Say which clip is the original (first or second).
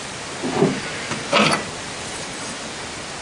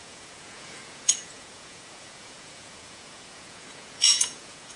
first